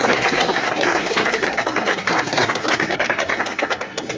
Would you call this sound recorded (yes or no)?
no